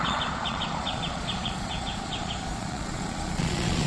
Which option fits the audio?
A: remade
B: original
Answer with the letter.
A